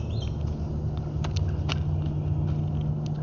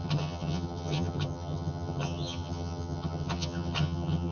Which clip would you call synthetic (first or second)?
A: second